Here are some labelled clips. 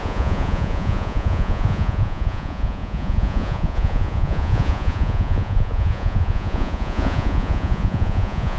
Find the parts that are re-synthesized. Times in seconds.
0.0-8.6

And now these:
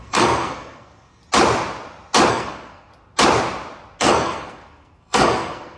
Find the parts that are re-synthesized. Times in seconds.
0.0-1.2; 2.3-2.9; 4.0-5.8

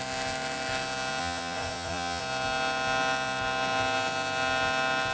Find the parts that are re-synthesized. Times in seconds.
1.2-2.2

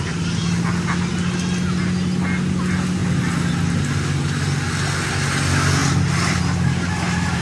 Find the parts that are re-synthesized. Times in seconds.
none

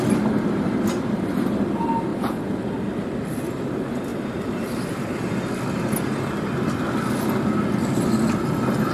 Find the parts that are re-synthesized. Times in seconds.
2.1-2.6; 4.1-5.1